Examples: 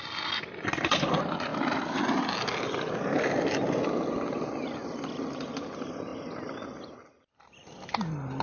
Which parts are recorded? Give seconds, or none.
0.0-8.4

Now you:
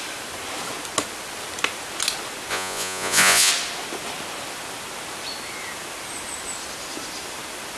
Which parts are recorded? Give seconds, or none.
0.0-2.5; 3.5-7.8

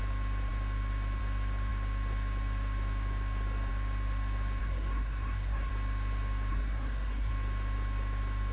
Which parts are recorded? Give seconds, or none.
0.0-4.6; 5.7-6.5; 7.3-8.5

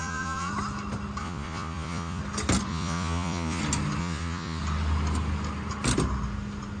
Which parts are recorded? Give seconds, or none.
0.5-1.2; 2.2-2.7; 3.6-4.0; 4.6-6.8